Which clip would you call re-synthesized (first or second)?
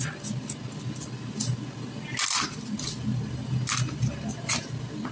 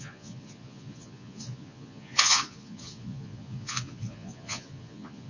second